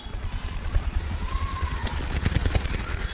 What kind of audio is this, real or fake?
fake